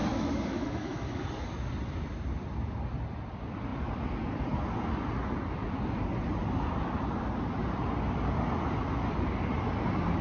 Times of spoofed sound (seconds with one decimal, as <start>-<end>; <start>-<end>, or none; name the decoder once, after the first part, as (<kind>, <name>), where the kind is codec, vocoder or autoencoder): 0.0-1.2 (autoencoder, DAC-VAE)

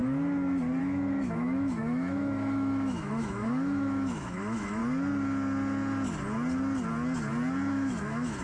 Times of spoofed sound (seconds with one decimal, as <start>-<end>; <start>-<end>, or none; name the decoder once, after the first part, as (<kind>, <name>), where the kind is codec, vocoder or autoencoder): 0.8-4.8 (autoencoder, DAC-VAE); 7.7-8.4